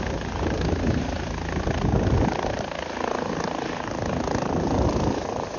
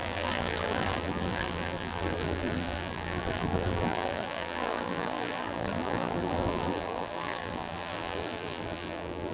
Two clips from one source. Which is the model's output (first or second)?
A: second